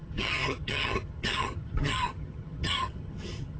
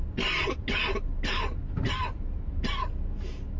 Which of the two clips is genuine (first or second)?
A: second